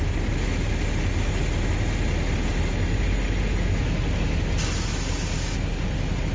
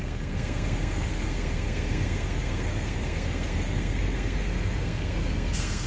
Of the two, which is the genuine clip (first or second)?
first